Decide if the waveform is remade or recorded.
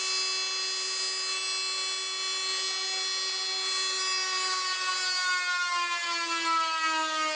recorded